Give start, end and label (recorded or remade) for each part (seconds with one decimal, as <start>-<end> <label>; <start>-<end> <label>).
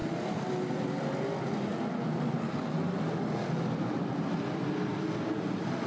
0.0-1.2 remade; 1.2-1.7 recorded; 1.7-4.6 remade; 4.6-5.9 recorded